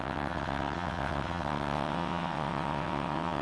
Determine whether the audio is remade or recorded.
remade